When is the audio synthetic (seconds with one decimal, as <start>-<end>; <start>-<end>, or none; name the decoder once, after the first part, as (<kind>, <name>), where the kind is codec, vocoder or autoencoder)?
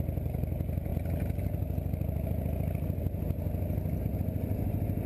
none